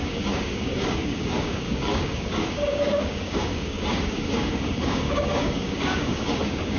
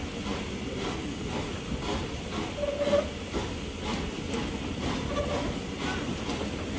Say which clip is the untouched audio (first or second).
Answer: second